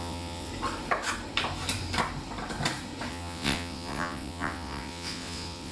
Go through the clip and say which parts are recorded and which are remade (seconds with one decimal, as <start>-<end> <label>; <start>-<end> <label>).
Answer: 0.0-0.5 remade; 0.5-3.1 recorded; 3.1-5.7 remade